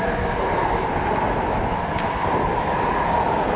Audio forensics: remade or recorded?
recorded